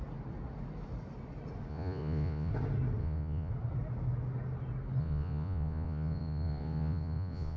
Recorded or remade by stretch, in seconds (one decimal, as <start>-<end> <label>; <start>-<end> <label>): 0.0-1.7 recorded; 1.7-2.5 remade; 2.5-3.0 recorded; 3.0-3.5 remade; 3.5-5.0 recorded; 5.0-7.6 remade